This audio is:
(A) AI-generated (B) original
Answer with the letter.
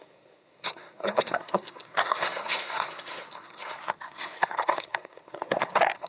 A